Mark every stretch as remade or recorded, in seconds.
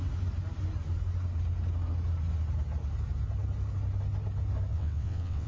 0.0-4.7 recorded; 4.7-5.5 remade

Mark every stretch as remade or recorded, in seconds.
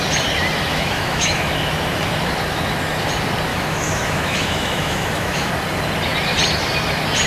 0.0-0.7 recorded; 0.7-1.5 remade; 1.5-3.5 recorded; 3.5-5.5 remade; 5.5-7.3 recorded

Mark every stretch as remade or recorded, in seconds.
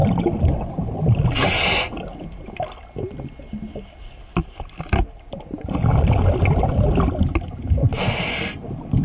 0.0-9.0 recorded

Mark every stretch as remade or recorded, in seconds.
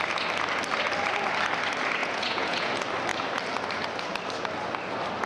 0.0-2.0 recorded; 2.0-2.7 remade; 2.7-5.3 recorded